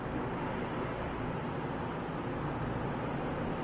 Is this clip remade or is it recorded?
recorded